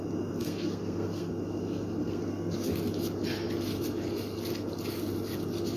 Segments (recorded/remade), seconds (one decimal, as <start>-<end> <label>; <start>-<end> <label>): 0.0-0.4 recorded; 0.4-1.3 remade; 1.3-2.0 recorded; 2.0-2.7 remade; 2.7-5.8 recorded